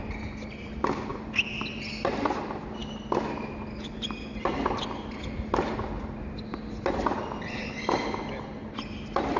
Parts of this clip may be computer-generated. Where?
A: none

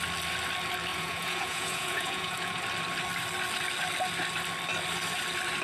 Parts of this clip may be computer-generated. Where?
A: 0.9-2.6 (vocoder, Vocos)

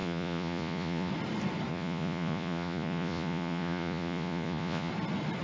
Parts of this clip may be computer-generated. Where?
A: 0.0-1.1 (vocoder, Vocos); 1.7-4.9

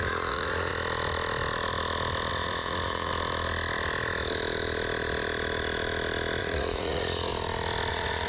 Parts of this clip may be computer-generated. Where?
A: 0.0-0.7 (vocoder, Vocos); 2.3-3.1; 6.4-7.3; 7.9-8.3

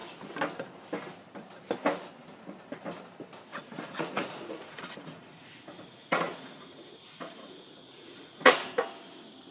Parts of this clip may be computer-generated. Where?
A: 3.5-8.5 (vocoder, Vocos)